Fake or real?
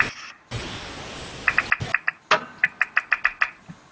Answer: real